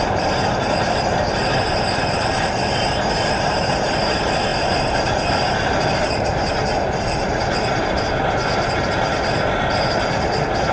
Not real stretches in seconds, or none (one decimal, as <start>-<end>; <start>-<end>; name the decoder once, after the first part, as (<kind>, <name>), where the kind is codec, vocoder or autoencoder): none